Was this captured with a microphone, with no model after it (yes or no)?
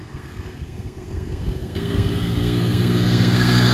no